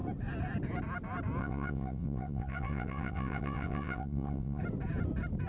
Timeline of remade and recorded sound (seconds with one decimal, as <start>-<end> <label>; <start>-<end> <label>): 0.0-1.4 recorded; 1.4-4.6 remade; 4.6-5.5 recorded